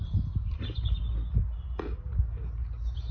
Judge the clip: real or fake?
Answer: real